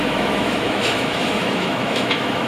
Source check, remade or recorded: remade